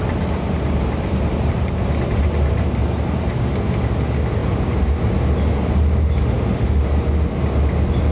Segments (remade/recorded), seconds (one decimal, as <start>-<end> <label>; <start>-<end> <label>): 0.0-6.2 recorded; 6.2-6.8 remade; 6.8-8.1 recorded